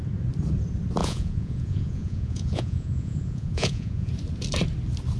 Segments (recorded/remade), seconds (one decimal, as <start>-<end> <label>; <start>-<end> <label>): 0.0-1.0 recorded; 1.0-4.1 remade; 4.1-5.2 recorded